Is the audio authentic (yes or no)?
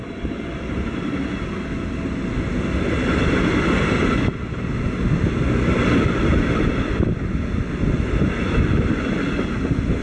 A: yes